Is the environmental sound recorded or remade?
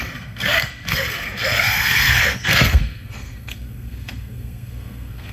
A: remade